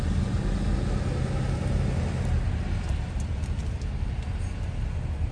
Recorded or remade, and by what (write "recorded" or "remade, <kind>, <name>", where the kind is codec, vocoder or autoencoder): recorded